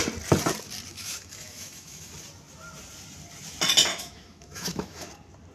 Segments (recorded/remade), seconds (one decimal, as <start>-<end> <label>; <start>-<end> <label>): 0.0-0.9 recorded; 0.9-2.1 remade; 2.1-3.9 recorded; 3.9-5.1 remade; 5.1-5.5 recorded